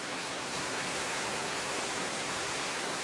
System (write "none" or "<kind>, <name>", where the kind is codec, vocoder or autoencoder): codec, SNAC